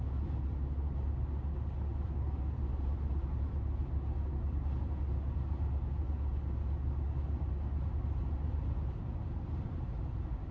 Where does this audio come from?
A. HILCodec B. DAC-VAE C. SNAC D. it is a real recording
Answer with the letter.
D